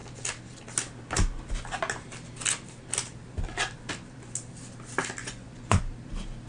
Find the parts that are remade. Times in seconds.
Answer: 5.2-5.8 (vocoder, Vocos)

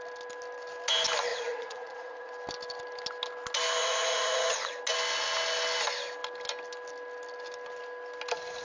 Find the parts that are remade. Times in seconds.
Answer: 1.3-2.3 (vocoder, Vocos); 3.8-4.7

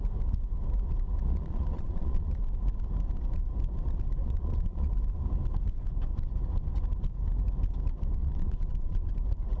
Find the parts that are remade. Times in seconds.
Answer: 1.2-2.4 (vocoder, Vocos); 4.2-4.9; 8.2-9.1

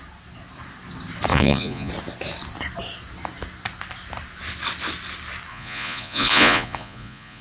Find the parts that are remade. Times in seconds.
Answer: 1.3-1.9 (vocoder, Vocos); 5.5-7.4

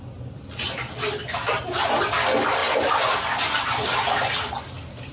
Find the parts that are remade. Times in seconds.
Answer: none

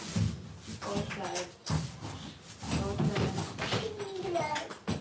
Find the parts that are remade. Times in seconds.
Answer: none

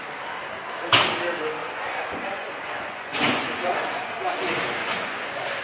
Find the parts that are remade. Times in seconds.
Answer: 1.6-4.1 (vocoder, Vocos); 4.8-5.6